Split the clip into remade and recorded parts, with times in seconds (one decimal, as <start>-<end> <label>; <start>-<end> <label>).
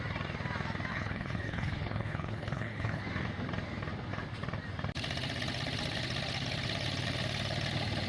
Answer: 0.0-0.9 recorded; 0.9-3.0 remade; 3.0-8.1 recorded